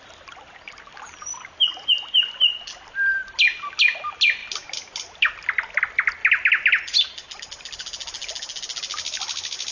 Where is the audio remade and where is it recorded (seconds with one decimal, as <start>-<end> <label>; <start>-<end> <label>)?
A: 0.0-9.7 recorded

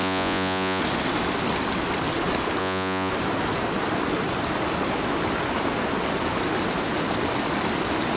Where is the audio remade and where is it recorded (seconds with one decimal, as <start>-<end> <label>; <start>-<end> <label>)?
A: 0.0-0.8 remade; 0.8-2.6 recorded; 2.6-3.1 remade; 3.1-8.2 recorded

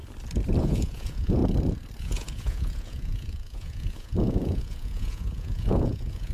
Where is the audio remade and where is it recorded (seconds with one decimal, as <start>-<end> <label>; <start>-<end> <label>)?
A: 0.0-0.6 recorded; 0.6-1.4 remade; 1.4-2.0 recorded; 2.0-6.3 remade

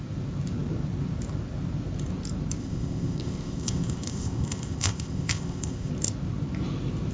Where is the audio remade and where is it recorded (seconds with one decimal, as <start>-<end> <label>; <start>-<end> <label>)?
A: 0.0-2.6 recorded; 2.6-5.9 remade; 5.9-7.1 recorded

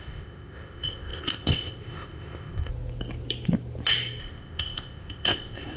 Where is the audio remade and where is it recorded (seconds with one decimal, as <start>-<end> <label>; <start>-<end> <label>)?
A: 0.0-2.7 remade; 2.7-4.2 recorded; 4.2-5.8 remade